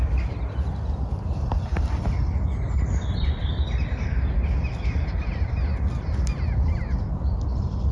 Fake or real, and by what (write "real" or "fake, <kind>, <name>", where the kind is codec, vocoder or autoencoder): real